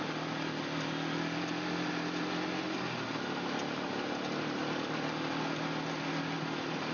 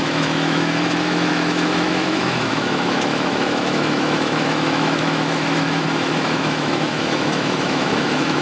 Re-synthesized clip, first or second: second